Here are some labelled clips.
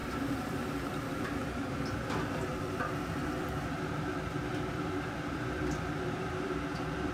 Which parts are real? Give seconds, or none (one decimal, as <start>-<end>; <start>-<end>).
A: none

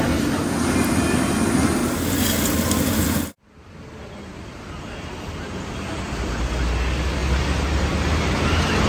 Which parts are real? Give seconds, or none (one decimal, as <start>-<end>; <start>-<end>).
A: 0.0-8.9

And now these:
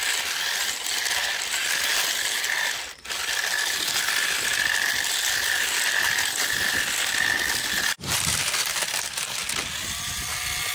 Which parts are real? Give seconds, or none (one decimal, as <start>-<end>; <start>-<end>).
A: 0.0-10.7